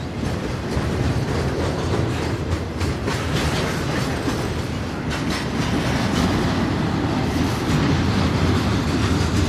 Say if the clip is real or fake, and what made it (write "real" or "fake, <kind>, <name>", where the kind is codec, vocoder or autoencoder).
real